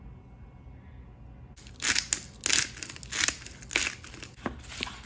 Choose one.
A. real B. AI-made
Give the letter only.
A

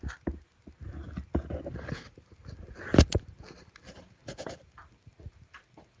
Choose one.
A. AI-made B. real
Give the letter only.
B